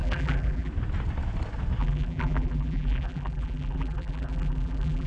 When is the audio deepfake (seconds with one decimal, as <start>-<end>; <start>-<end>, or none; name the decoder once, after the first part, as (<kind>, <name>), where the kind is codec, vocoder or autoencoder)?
0.0-0.7 (vocoder, BigVGAN v2); 1.8-5.1